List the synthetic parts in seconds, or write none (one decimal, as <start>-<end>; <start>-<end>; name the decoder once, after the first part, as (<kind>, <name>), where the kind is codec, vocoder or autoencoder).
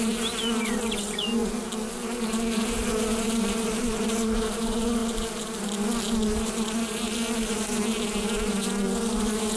none